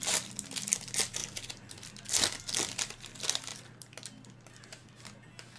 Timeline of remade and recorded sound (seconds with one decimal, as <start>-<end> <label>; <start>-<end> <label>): 0.0-5.6 recorded